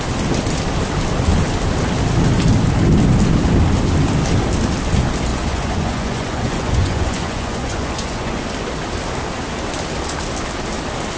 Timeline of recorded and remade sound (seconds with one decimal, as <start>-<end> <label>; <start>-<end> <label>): 0.0-5.3 recorded; 5.3-8.4 remade; 8.4-11.2 recorded